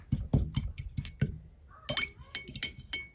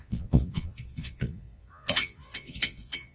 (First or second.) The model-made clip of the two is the second